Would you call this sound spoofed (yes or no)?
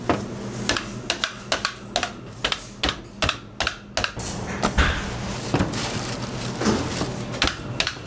no